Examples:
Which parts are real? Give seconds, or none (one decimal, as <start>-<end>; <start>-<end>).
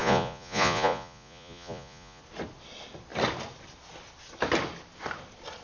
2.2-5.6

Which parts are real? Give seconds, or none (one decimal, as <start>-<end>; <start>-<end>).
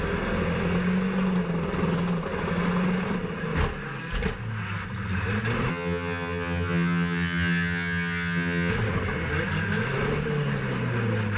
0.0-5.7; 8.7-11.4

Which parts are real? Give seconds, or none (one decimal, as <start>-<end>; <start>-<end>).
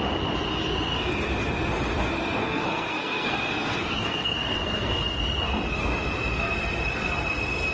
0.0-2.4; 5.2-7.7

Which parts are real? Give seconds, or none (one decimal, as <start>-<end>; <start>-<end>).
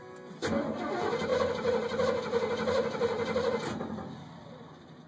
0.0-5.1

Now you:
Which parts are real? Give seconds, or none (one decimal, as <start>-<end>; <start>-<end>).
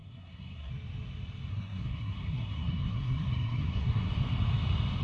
0.7-1.5; 4.1-5.0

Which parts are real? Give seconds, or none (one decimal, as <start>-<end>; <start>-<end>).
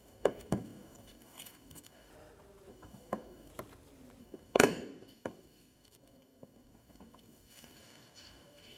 2.1-2.7; 3.5-4.2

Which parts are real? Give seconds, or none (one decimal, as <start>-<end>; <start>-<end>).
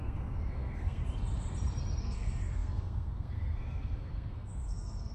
1.0-2.0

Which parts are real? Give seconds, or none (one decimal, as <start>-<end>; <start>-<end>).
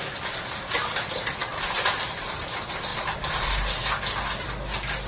0.0-2.9; 3.9-5.1